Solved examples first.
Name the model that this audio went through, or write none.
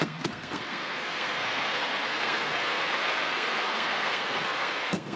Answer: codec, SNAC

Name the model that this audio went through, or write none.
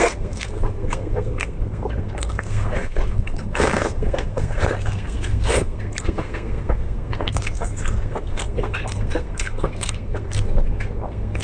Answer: codec, SNAC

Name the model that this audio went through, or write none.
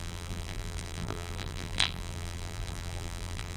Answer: vocoder, BigVGAN v2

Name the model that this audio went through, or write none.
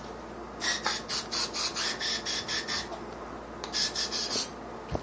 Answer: none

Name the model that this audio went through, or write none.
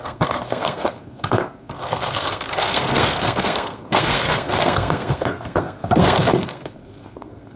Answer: codec, SNAC